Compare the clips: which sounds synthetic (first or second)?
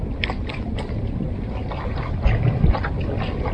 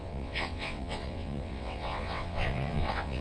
second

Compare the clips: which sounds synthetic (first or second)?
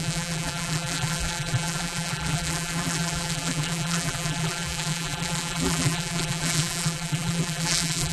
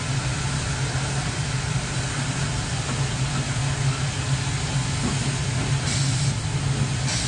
first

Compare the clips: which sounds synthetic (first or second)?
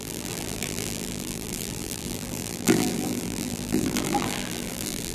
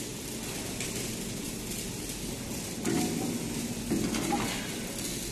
first